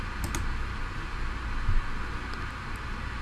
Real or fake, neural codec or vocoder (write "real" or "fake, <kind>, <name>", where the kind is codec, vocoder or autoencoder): real